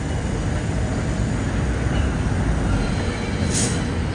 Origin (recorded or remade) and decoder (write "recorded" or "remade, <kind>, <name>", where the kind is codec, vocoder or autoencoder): recorded